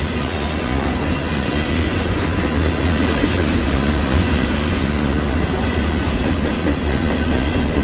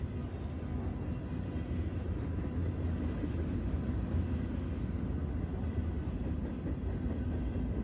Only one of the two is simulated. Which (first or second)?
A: first